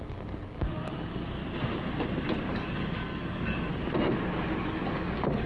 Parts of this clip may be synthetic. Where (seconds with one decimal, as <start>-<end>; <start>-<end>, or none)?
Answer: 0.0-1.4; 2.5-3.7; 4.6-5.5